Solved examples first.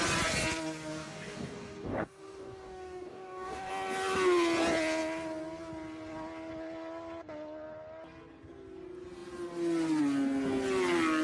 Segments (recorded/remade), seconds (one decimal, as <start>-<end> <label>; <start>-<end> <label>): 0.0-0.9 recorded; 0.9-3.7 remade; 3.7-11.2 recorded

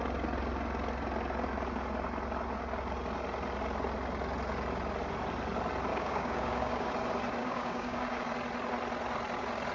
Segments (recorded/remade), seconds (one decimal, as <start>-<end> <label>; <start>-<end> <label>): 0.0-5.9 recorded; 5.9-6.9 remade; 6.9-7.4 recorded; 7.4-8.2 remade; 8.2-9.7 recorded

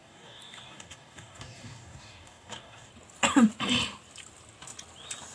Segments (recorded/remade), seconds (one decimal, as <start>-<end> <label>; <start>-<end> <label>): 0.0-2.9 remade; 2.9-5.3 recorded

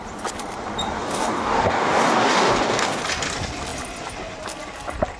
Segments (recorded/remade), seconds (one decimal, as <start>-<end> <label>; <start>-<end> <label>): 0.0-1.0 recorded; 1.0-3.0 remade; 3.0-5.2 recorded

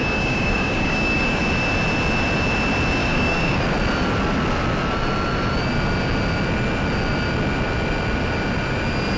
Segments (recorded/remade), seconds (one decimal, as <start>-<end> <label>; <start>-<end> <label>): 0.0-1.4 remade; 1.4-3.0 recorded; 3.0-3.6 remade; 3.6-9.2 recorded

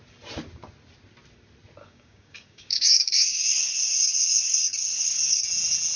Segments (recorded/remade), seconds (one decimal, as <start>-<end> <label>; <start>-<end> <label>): 0.0-1.8 recorded; 1.8-5.4 remade; 5.4-6.0 recorded

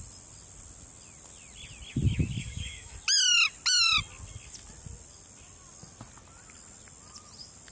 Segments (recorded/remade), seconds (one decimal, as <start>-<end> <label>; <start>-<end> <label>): 0.0-2.4 recorded; 2.4-2.9 remade; 2.9-7.7 recorded

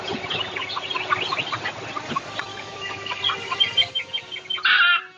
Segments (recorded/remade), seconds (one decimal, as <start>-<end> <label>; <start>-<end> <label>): 0.0-2.5 recorded; 2.5-3.2 remade; 3.2-5.2 recorded